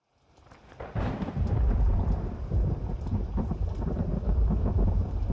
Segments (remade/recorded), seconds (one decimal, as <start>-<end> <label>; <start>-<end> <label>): 0.0-5.3 recorded